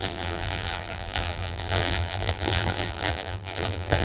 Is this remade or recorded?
remade